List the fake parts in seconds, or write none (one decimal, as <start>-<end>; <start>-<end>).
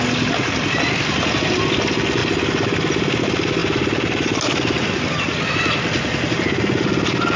none